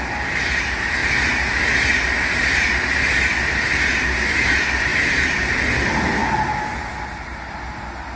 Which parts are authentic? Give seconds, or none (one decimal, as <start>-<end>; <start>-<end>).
0.0-1.0; 1.5-4.9; 5.7-8.2